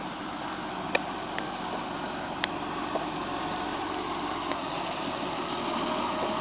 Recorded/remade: recorded